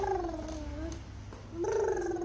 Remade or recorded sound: recorded